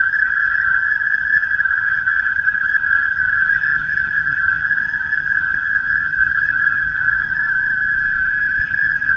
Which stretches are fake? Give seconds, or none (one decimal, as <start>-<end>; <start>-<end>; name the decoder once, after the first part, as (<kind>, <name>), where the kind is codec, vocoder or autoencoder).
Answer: 0.0-7.4 (vocoder, HiFi-GAN); 8.6-9.2